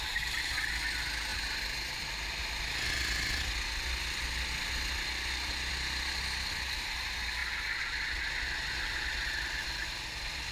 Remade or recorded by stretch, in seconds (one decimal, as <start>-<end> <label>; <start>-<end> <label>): 0.0-10.5 recorded